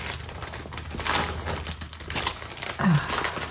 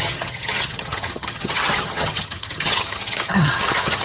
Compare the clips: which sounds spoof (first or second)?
second